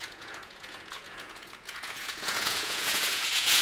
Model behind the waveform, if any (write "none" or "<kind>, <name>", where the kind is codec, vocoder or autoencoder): vocoder, Vocos